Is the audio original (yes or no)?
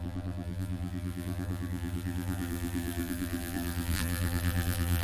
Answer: no